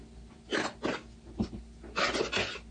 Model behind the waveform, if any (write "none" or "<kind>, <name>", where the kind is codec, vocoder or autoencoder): none